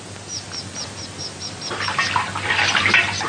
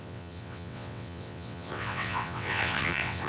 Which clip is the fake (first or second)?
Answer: second